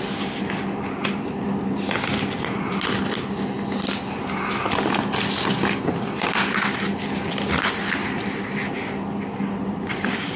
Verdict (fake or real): real